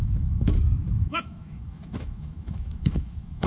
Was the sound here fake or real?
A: fake